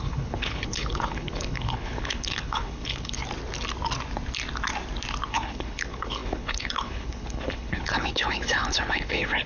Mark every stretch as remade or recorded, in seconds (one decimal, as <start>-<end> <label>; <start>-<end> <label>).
0.0-3.2 remade; 3.2-5.3 recorded; 5.3-9.5 remade